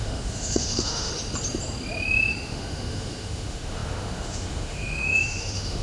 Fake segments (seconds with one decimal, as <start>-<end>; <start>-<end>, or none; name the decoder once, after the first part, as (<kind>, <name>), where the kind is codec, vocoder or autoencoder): 0.0-1.1 (autoencoder, DAC-VAE); 2.3-5.8